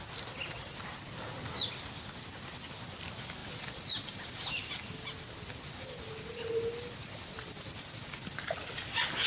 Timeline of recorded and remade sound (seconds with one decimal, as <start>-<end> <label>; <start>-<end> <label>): 0.0-9.3 recorded